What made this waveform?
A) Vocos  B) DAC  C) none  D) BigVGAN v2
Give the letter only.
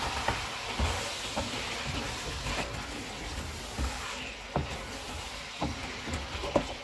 D